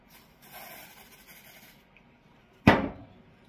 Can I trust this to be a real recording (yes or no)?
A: yes